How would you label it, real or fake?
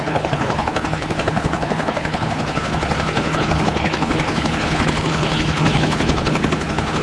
fake